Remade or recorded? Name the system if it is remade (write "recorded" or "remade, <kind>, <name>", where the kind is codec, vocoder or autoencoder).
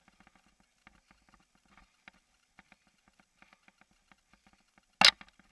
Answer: recorded